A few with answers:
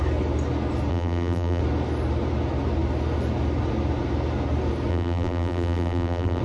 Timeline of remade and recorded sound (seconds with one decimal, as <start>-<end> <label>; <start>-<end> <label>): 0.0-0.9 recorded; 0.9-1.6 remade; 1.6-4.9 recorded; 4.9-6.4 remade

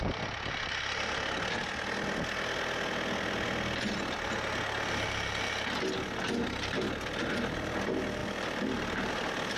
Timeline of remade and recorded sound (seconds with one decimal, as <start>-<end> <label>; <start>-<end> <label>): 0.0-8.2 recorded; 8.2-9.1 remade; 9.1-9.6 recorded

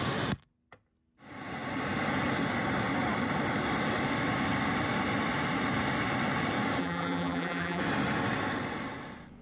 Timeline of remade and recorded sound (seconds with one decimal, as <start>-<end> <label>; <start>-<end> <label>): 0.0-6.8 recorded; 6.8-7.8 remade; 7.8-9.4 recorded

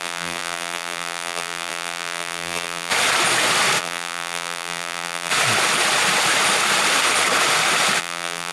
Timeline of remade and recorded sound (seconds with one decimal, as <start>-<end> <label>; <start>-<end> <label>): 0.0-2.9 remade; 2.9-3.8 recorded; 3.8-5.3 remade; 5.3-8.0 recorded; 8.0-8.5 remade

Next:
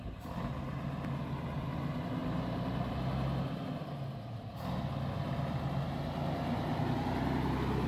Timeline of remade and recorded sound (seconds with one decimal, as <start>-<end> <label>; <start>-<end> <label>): 0.0-2.2 recorded; 2.2-2.9 remade; 2.9-7.9 recorded

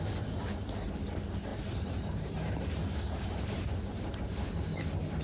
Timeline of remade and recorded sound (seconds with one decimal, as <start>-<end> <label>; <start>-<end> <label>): 0.0-1.5 recorded; 1.5-4.2 remade; 4.2-5.2 recorded